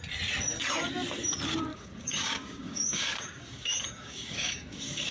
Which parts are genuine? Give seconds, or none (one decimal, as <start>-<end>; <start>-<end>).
0.0-1.7